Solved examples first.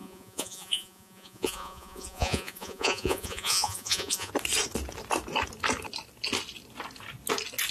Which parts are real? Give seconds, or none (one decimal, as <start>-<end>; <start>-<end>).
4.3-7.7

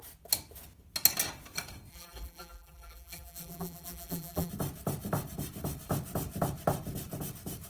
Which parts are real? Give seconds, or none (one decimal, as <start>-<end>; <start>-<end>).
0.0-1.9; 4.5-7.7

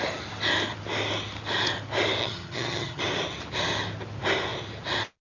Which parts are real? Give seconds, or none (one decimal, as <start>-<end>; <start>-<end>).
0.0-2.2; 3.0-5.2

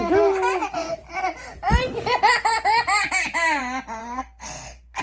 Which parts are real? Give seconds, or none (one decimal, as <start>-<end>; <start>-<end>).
0.0-4.0

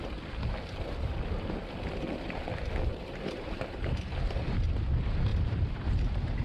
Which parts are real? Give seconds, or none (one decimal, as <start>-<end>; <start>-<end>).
0.0-2.9; 4.4-5.3

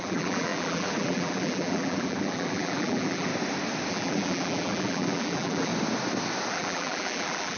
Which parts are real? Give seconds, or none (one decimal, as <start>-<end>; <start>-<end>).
3.3-3.9; 5.7-6.5